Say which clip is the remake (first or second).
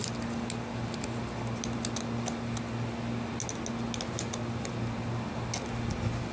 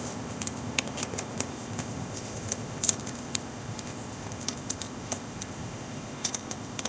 second